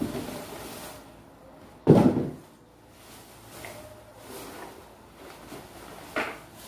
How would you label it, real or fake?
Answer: real